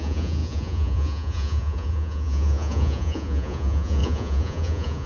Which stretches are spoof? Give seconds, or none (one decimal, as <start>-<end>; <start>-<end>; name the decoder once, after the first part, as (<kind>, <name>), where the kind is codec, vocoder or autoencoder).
0.0-5.1 (vocoder, Vocos)